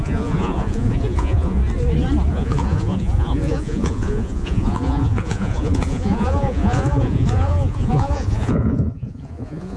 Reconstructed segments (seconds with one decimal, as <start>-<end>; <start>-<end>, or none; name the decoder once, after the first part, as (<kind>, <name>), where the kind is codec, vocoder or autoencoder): 0.0-1.6 (vocoder, Vocos); 2.3-9.8